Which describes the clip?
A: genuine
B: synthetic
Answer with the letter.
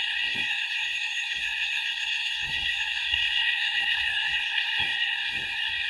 B